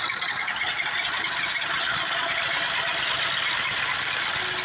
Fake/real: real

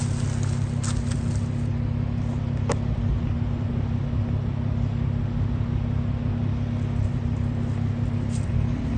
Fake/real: real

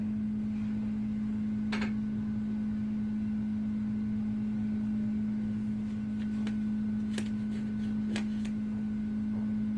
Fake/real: real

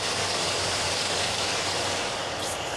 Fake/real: fake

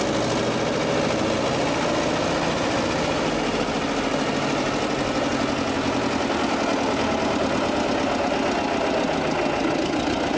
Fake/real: real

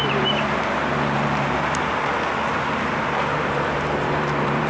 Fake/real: fake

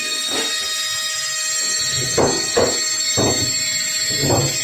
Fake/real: real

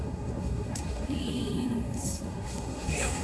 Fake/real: fake